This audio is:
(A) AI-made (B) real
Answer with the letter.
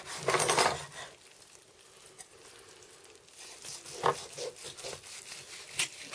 B